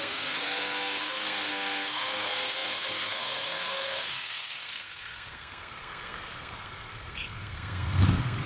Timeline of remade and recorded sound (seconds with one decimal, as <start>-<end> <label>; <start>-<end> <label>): 0.0-8.5 remade